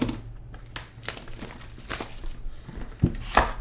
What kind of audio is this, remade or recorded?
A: recorded